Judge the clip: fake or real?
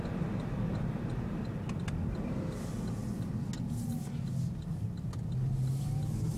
real